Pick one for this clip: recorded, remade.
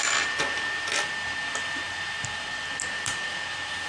recorded